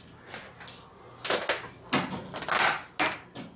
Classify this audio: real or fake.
real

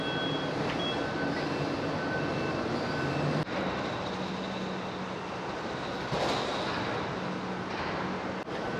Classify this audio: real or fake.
real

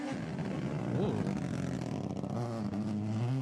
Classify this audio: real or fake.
real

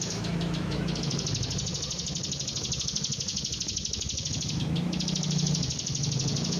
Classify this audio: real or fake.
fake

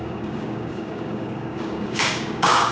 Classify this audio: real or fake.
fake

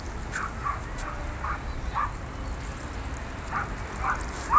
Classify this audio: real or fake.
real